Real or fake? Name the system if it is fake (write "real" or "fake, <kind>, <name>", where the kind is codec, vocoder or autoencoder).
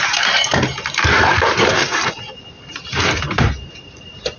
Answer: fake, vocoder, BigVGAN v2